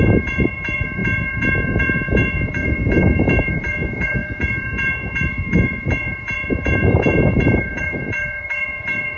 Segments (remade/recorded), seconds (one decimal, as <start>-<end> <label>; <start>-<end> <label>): 0.0-9.2 remade